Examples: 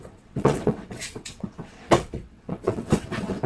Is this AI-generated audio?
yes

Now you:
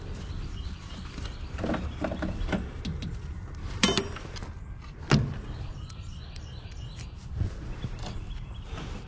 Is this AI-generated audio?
no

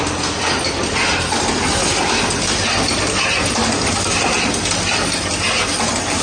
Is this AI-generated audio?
no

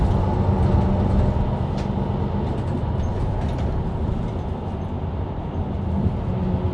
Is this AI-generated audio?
no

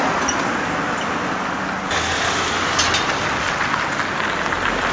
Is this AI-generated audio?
no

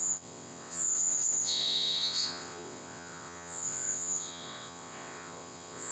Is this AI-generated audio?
yes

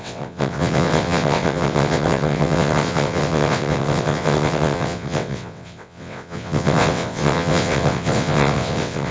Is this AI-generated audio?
yes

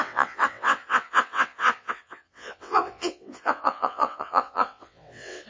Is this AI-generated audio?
yes